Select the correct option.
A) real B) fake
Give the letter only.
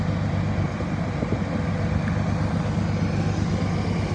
A